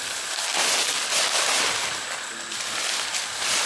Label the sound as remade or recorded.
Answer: recorded